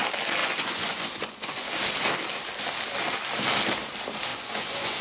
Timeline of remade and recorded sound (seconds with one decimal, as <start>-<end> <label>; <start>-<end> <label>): 0.0-0.4 recorded; 0.4-1.7 remade; 1.7-4.3 recorded; 4.3-5.0 remade